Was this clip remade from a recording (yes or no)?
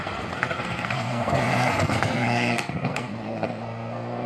yes